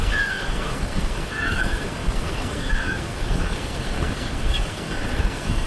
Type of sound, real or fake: fake